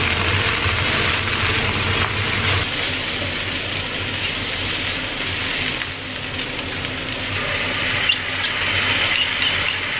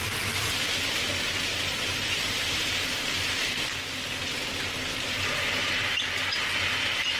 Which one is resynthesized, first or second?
second